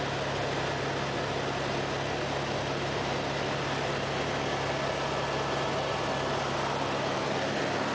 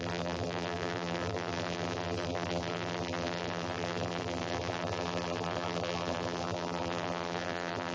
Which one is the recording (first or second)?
first